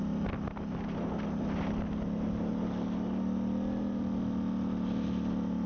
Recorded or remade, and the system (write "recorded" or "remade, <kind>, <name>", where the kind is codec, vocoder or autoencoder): recorded